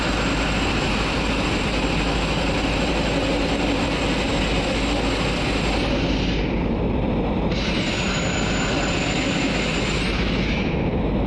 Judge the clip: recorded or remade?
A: recorded